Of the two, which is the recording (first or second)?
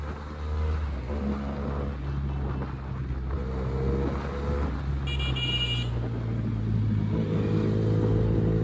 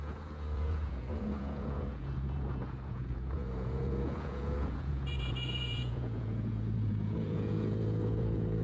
first